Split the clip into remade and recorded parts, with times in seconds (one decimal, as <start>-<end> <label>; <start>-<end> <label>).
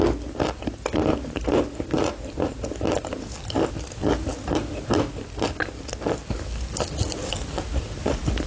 0.0-1.1 recorded; 1.1-3.7 remade; 3.7-8.5 recorded